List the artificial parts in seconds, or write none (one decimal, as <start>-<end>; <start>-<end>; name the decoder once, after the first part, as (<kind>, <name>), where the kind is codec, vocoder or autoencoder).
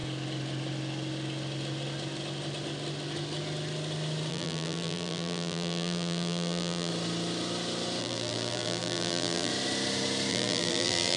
4.3-6.9 (vocoder, BigVGAN v2); 8.0-9.5; 10.3-11.2